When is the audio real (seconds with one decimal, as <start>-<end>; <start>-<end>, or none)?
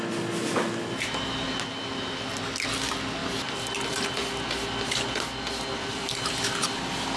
0.0-5.8; 6.3-7.2